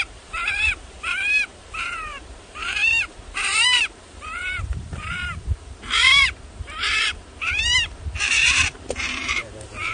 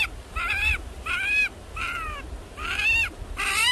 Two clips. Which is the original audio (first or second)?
second